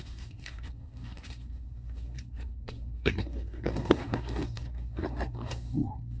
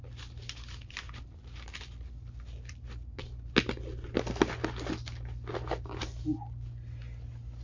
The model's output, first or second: first